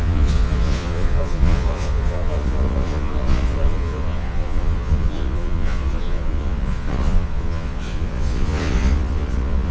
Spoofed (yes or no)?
yes